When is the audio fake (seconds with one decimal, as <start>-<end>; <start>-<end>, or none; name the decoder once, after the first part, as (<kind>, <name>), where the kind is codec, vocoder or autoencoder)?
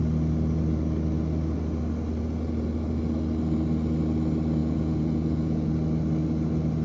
4.6-5.7 (vocoder, Vocos)